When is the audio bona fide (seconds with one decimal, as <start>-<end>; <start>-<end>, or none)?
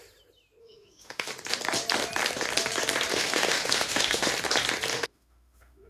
0.0-0.6; 1.3-3.1; 4.3-4.9